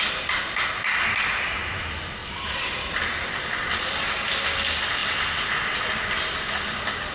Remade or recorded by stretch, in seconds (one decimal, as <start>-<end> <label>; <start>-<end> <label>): 0.0-2.2 recorded; 2.2-3.1 remade; 3.1-7.1 recorded